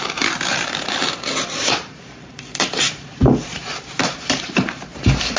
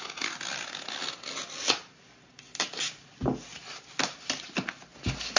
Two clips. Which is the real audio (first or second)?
second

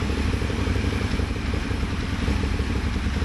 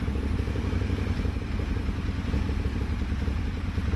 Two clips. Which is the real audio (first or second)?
second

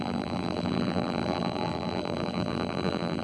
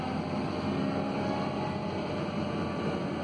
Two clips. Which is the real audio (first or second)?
second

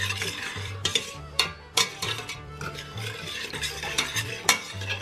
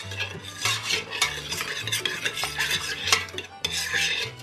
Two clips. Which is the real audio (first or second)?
second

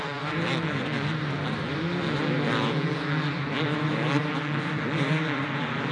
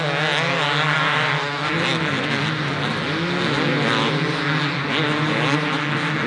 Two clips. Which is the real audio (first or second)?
second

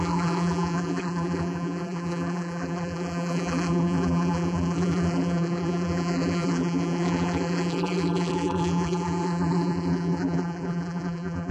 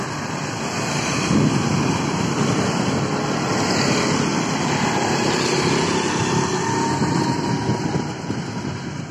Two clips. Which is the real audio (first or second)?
second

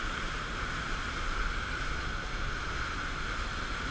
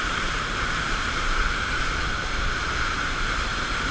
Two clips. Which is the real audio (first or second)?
first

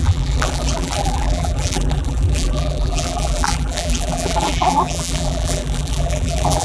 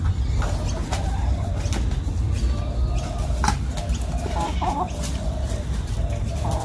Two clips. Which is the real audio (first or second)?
second